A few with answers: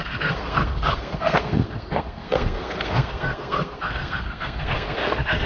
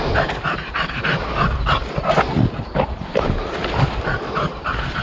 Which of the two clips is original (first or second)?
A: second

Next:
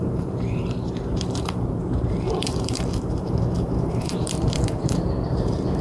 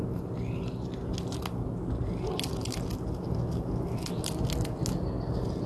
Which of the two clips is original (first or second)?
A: second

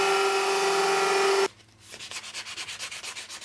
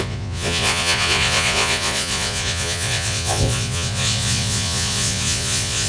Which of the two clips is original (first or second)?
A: first